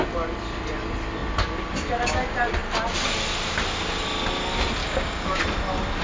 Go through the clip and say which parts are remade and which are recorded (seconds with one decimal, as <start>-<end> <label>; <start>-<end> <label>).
0.0-4.8 recorded; 4.8-5.4 remade; 5.4-6.0 recorded